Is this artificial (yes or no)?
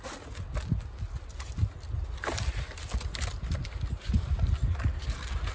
no